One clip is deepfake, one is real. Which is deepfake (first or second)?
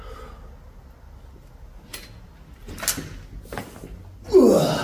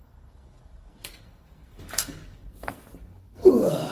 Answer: second